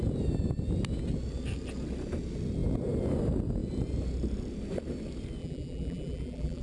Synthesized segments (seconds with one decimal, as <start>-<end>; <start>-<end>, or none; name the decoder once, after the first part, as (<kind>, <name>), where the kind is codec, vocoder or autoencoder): 5.4-6.6 (vocoder, BigVGAN v2)